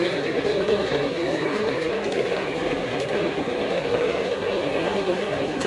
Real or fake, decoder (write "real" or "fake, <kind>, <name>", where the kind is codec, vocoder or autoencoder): fake, codec, SNAC